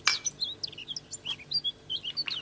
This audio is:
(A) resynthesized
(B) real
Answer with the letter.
B